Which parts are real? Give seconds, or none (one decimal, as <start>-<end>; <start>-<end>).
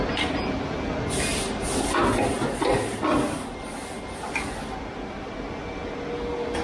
0.0-6.6